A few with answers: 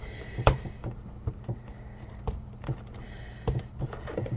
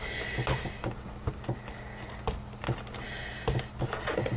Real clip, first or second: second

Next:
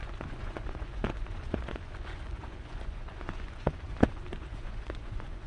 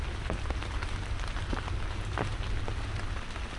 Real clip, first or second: second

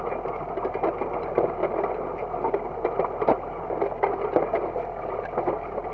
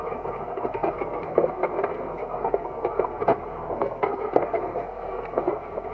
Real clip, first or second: first